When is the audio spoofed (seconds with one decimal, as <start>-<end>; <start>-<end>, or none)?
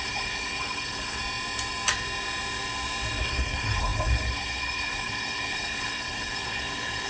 0.0-1.2; 3.2-7.1